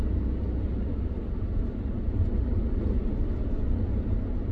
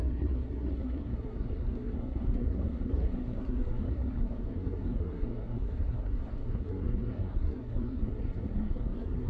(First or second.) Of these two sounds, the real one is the first